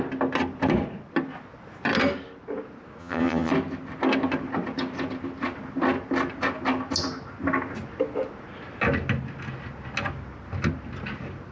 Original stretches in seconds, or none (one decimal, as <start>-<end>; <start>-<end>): 0.0-3.0; 3.5-11.5